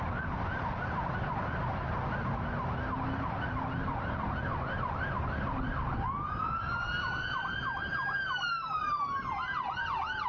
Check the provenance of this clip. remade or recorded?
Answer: recorded